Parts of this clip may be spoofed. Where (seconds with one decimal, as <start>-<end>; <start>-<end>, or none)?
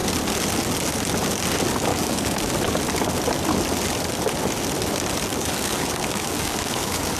1.9-2.5; 5.3-7.2